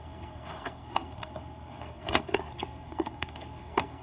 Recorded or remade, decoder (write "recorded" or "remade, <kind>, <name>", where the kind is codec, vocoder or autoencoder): remade, codec, SNAC